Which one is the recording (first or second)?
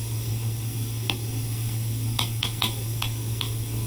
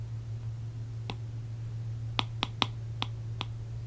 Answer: second